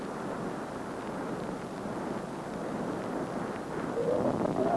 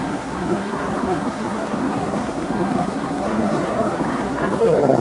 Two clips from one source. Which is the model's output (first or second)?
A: second